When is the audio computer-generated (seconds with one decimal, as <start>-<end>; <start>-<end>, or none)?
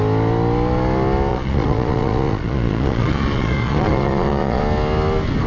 1.3-4.6